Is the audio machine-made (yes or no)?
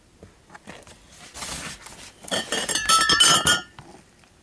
yes